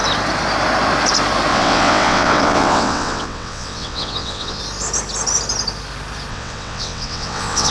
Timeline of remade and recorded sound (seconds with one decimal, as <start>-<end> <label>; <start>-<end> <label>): 0.0-1.5 recorded; 1.5-4.6 remade; 4.6-6.3 recorded; 6.3-7.7 remade